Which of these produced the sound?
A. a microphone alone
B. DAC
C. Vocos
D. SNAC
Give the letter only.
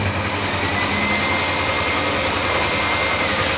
A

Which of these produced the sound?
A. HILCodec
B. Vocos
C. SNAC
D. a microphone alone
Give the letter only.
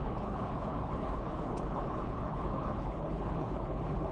A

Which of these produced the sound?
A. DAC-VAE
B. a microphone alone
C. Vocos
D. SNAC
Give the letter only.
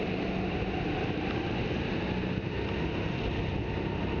B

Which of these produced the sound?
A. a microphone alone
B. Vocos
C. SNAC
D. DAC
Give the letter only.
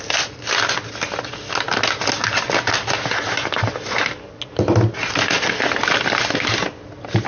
A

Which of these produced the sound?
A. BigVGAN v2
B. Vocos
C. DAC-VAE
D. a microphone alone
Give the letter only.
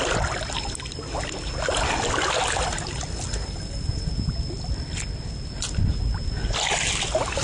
D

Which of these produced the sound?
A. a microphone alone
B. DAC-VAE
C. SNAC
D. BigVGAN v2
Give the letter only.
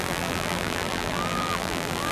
D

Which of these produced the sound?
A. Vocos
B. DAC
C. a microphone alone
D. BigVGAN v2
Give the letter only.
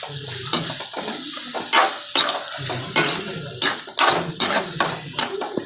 C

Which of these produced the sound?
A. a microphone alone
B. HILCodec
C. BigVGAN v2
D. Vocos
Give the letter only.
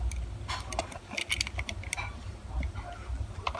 A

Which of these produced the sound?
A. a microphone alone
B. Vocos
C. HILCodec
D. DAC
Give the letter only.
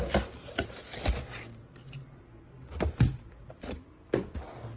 A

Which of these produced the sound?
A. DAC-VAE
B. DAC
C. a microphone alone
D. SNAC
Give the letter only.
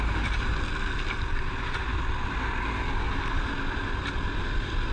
C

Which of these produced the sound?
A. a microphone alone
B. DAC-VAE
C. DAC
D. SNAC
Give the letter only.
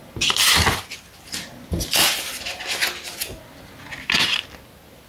A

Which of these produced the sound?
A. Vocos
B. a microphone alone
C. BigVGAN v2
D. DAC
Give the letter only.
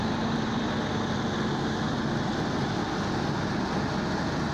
B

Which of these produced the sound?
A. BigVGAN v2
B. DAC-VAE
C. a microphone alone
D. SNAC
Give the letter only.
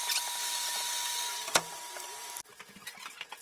C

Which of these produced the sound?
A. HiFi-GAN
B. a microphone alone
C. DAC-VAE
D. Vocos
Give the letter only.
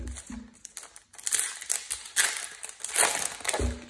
B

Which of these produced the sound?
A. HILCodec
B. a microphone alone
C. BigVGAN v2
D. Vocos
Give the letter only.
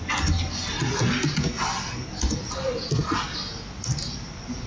B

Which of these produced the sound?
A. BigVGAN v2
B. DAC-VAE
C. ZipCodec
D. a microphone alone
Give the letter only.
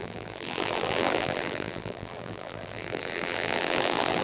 A